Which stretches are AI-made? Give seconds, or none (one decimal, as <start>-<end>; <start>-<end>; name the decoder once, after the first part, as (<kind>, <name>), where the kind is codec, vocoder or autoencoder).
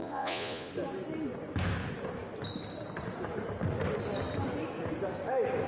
0.0-0.7 (vocoder, Vocos)